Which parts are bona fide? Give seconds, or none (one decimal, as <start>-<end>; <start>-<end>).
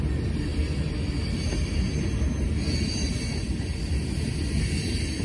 0.0-5.2